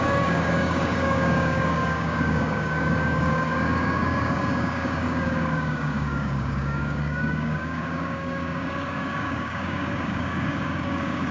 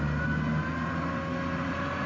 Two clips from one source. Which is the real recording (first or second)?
second